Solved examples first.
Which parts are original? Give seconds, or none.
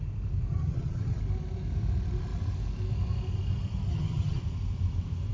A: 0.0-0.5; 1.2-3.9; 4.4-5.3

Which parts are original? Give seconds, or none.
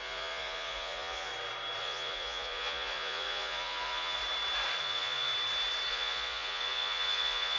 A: 1.3-1.8; 4.2-4.8; 5.3-5.9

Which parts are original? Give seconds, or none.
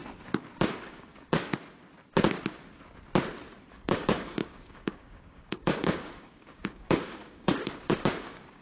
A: 0.0-0.6; 1.5-3.7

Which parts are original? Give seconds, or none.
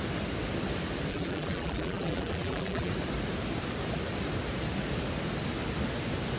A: 0.0-1.1; 2.9-6.4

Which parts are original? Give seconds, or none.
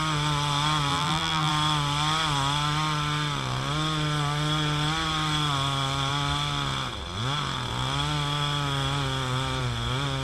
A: 0.0-0.9; 1.5-10.2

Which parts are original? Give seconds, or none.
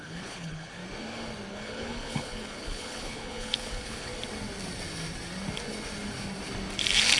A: 0.8-1.5; 4.1-7.2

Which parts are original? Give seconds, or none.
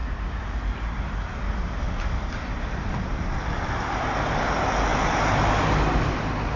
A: 4.0-4.9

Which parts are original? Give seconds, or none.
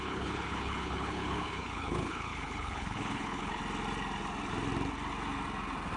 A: 3.6-6.0